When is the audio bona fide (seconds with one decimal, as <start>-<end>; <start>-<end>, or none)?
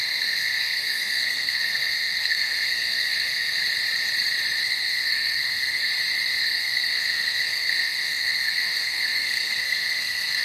3.6-4.6; 5.8-6.4